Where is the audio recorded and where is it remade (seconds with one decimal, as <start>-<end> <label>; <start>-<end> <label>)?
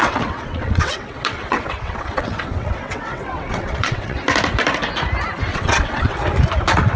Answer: 0.0-4.2 remade; 4.2-5.5 recorded; 5.5-6.2 remade; 6.2-7.0 recorded